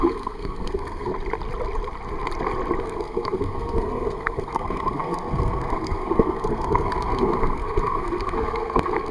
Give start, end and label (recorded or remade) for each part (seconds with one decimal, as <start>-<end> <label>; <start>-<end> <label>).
0.0-1.1 remade; 1.1-2.8 recorded; 2.8-9.1 remade